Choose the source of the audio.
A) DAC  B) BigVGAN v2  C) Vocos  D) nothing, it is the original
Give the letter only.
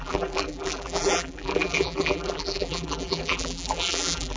B